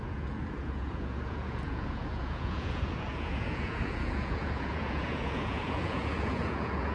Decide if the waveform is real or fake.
fake